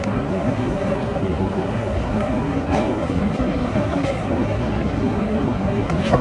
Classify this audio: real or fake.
fake